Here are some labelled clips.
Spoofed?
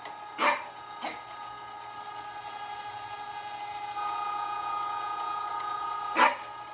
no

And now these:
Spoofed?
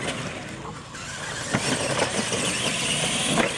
no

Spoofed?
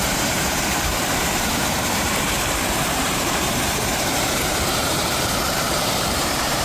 yes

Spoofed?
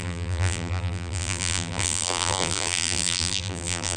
yes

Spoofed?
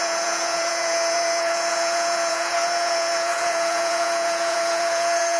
yes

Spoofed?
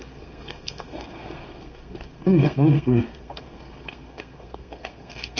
yes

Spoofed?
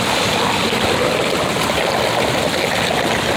no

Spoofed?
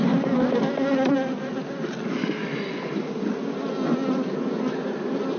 no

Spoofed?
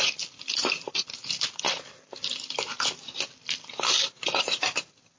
no